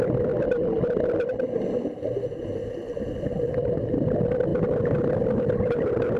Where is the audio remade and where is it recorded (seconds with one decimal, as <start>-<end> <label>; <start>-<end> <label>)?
0.0-6.2 recorded